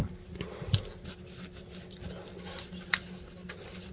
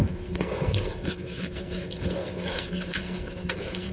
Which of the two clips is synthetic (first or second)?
second